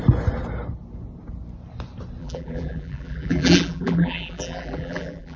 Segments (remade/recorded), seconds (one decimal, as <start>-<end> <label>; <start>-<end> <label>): 0.0-2.2 recorded; 2.2-5.4 remade

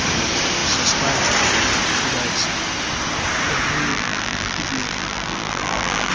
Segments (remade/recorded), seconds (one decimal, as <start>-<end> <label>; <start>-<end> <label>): 0.0-3.9 recorded; 3.9-6.1 remade

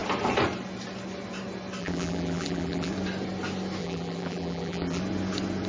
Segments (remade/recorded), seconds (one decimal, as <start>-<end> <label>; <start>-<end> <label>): 0.0-1.8 recorded; 1.8-2.9 remade; 2.9-3.8 recorded; 3.8-5.0 remade; 5.0-5.7 recorded

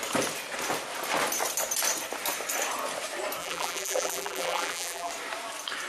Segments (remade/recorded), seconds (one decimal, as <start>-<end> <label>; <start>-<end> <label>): 0.0-3.4 recorded; 3.4-5.1 remade; 5.1-5.9 recorded

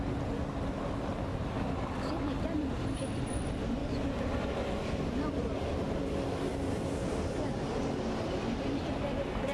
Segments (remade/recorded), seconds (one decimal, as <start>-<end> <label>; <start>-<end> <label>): 0.0-3.8 recorded; 3.8-6.0 remade; 6.0-9.5 recorded